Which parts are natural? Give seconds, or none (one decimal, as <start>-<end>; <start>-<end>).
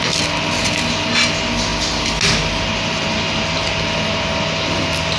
0.0-5.2